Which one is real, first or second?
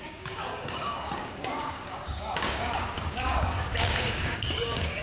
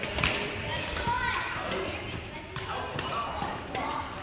second